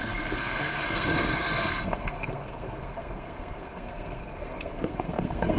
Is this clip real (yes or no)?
no